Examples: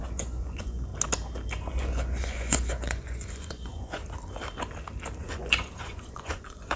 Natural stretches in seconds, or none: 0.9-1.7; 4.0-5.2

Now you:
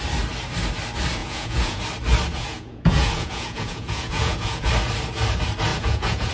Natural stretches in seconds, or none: 0.0-1.2; 1.8-2.3; 4.7-5.7

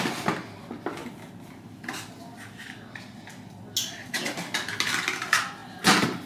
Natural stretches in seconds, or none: 0.0-6.3

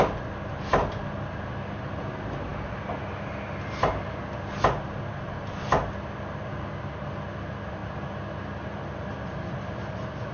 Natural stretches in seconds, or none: 0.0-10.3